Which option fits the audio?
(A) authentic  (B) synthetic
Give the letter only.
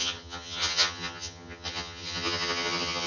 B